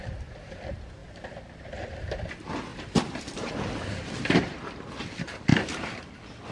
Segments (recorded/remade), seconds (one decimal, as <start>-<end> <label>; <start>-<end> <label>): 0.0-1.0 recorded; 1.0-2.0 remade; 2.0-2.7 recorded; 2.7-3.5 remade; 3.5-5.5 recorded; 5.5-6.1 remade; 6.1-6.5 recorded